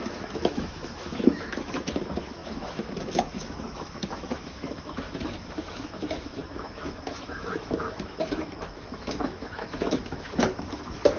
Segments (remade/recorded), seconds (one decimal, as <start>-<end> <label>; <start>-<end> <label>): 0.0-11.2 remade